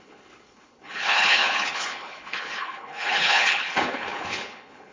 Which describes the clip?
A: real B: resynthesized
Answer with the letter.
B